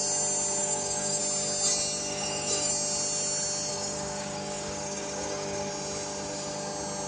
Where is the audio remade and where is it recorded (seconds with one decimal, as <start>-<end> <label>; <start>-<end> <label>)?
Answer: 0.0-0.6 recorded; 0.6-1.2 remade; 1.2-2.1 recorded; 2.1-2.7 remade; 2.7-3.7 recorded; 3.7-5.7 remade; 5.7-7.1 recorded